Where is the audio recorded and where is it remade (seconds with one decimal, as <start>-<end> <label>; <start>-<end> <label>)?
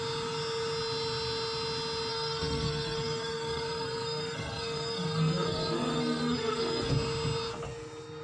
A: 0.0-2.1 recorded; 2.1-6.9 remade; 6.9-8.2 recorded